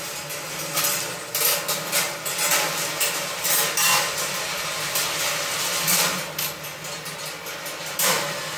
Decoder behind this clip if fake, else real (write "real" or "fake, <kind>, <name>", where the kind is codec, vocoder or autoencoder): real